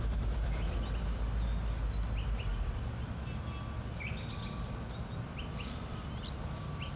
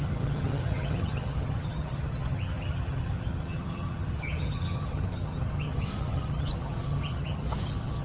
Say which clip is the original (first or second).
first